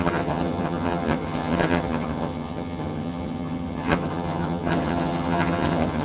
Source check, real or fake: fake